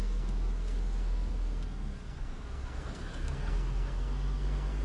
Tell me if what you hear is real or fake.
fake